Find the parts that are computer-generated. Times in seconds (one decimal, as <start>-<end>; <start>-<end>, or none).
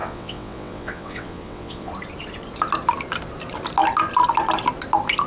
0.0-1.9